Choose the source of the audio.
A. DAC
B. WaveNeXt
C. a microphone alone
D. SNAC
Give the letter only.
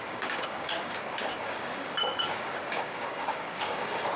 A